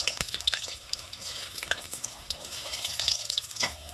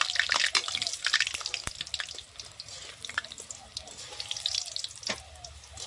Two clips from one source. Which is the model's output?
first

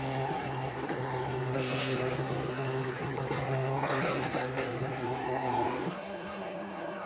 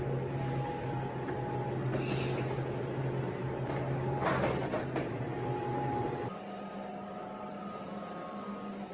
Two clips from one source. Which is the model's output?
first